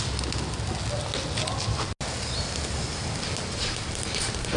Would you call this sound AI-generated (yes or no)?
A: no